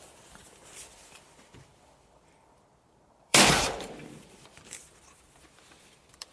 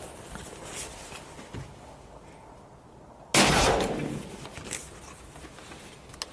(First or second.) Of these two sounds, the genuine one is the second